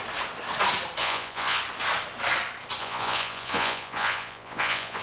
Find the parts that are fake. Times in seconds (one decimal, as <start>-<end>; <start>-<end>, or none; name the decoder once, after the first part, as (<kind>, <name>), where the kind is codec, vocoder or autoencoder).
1.0-1.6 (vocoder, Vocos); 2.8-5.0